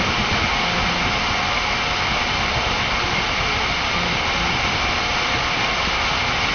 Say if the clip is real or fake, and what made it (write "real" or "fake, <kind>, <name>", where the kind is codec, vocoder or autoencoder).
real